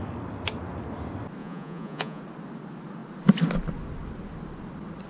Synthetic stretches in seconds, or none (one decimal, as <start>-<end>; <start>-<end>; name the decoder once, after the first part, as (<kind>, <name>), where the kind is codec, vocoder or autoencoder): 1.4-2.2 (vocoder, Vocos)